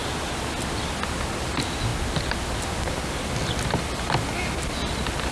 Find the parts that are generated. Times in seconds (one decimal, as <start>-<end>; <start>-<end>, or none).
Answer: none